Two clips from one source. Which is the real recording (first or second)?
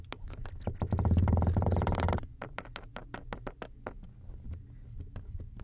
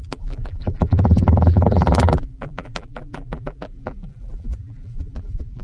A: first